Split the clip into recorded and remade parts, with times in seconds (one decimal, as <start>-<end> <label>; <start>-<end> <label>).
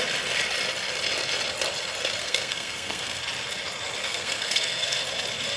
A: 0.0-2.2 recorded; 2.2-3.2 remade; 3.2-4.0 recorded; 4.0-5.0 remade; 5.0-5.6 recorded